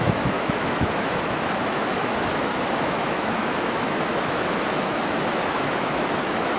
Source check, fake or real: fake